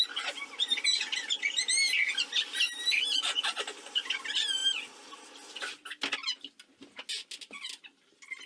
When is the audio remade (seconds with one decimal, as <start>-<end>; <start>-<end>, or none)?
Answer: none